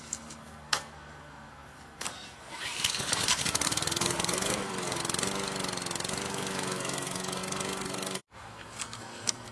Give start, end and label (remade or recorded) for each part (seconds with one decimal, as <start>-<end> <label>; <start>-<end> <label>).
0.0-5.0 remade; 5.0-6.3 recorded; 6.3-9.5 remade